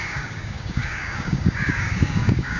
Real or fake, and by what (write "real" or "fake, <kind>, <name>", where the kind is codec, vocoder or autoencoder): fake, codec, DAC